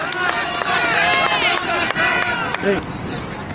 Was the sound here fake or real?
real